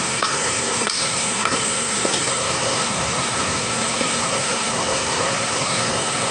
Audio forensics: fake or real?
fake